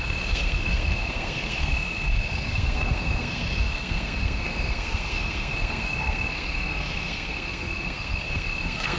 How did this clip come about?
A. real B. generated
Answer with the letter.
B